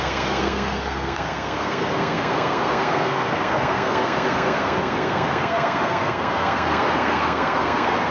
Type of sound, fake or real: fake